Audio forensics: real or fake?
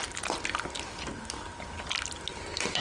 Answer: real